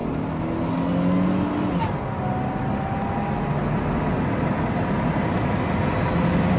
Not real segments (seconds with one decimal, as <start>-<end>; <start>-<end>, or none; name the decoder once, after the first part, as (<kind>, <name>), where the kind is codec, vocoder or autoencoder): none